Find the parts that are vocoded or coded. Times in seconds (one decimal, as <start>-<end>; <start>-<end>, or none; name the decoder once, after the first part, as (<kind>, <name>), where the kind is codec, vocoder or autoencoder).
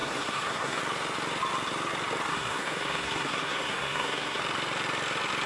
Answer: 0.0-0.8 (codec, SNAC); 2.3-4.4